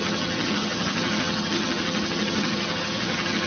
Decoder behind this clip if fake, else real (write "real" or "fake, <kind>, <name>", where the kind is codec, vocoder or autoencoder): fake, vocoder, HiFi-GAN